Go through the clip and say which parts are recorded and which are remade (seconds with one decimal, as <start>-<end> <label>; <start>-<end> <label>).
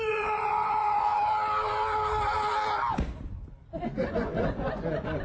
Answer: 0.0-1.1 remade; 1.1-3.8 recorded; 3.8-5.2 remade